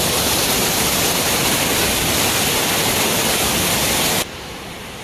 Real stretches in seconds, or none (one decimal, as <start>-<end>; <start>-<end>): 1.7-5.0